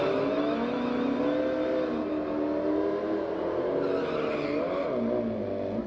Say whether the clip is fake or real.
real